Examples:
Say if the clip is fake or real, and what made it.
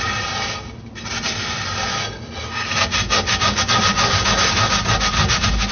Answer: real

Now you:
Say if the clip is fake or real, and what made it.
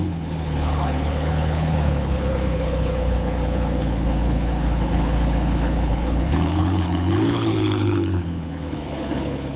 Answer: fake, codec, HILCodec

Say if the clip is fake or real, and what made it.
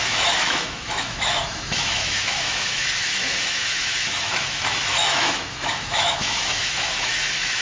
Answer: fake, autoencoder, DAC-VAE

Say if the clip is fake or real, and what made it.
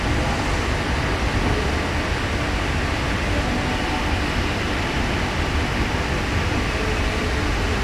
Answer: real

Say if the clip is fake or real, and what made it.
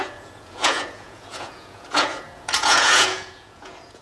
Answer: fake, vocoder, Vocos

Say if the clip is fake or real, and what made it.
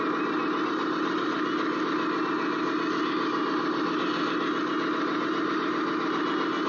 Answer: real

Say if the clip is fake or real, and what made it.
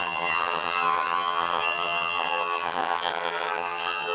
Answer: fake, vocoder, HiFi-GAN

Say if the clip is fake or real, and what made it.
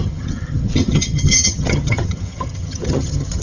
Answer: fake, vocoder, HiFi-GAN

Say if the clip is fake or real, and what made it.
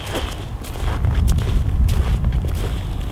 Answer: real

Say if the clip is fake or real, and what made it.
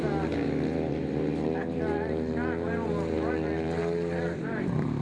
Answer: real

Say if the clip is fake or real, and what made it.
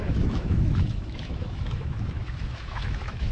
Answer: fake, autoencoder, DAC-VAE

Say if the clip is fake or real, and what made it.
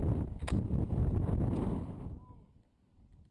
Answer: real